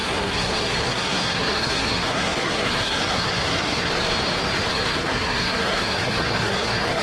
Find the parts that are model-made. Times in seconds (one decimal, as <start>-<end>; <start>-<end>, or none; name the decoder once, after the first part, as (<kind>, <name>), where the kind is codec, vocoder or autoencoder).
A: 0.0-3.9 (codec, SNAC); 4.7-7.0